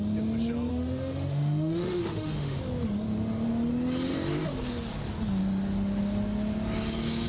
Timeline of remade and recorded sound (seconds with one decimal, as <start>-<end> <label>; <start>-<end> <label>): 0.0-0.7 recorded; 0.7-2.6 remade; 2.6-7.3 recorded